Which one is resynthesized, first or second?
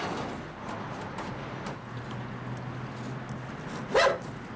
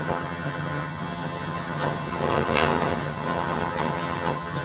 second